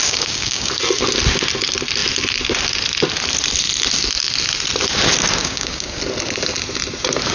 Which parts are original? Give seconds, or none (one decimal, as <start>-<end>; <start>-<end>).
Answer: 0.7-5.4; 6.0-7.3